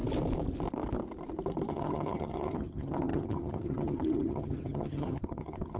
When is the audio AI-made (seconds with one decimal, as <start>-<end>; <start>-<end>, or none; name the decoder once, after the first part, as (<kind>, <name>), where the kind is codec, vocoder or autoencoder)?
1.7-5.8 (vocoder, HiFi-GAN)